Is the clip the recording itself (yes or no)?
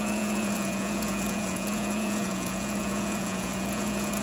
no